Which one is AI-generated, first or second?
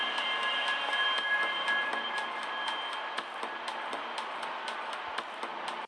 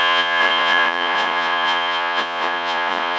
second